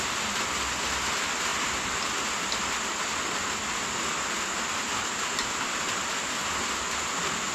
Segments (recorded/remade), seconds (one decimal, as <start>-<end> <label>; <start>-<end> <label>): 0.0-7.5 recorded